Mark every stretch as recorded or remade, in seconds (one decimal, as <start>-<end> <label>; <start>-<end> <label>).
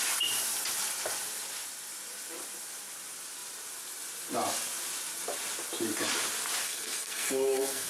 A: 0.0-6.6 recorded; 6.6-7.9 remade